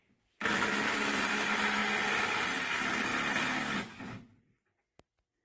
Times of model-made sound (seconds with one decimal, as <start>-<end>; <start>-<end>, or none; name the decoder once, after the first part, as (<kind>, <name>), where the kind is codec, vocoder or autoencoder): none